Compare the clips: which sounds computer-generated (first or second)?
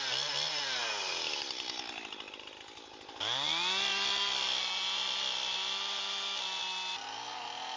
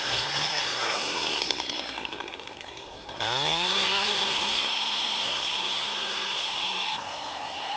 second